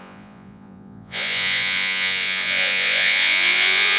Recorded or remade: remade